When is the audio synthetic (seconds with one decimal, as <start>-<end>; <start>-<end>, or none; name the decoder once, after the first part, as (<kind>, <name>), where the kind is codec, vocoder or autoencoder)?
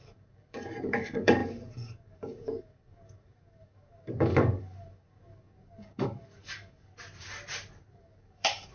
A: 0.0-6.9 (codec, DAC); 7.9-8.7